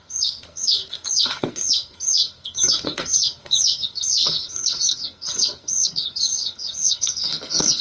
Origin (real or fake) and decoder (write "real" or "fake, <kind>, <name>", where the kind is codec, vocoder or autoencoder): fake, codec, SNAC